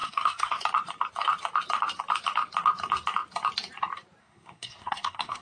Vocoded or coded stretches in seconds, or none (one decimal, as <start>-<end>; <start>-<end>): 0.0-0.6; 4.2-5.4